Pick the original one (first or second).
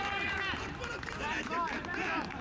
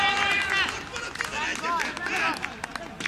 second